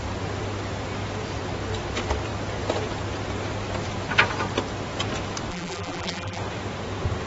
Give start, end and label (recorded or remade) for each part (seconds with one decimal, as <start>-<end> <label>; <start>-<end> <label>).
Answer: 0.0-5.5 recorded; 5.5-6.4 remade; 6.4-7.3 recorded